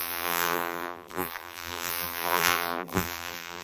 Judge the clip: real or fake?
fake